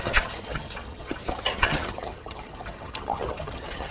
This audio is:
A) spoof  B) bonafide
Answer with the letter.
A